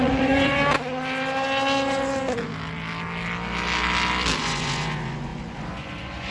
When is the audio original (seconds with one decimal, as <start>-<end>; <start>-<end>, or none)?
0.6-4.4

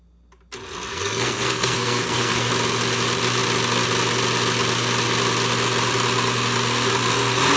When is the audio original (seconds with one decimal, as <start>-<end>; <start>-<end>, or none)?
0.0-0.9; 2.5-7.6

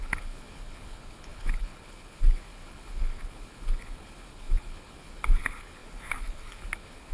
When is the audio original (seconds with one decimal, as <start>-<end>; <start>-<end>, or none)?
none